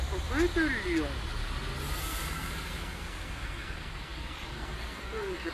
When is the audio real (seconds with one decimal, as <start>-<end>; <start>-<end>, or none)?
0.0-2.0